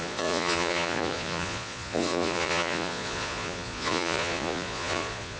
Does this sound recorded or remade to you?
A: remade